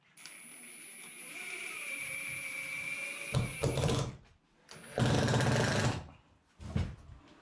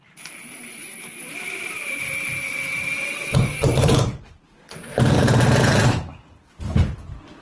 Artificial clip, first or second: second